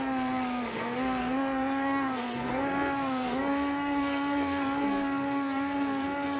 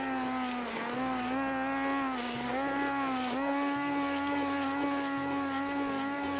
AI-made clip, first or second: first